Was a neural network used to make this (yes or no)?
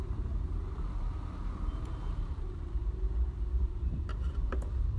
yes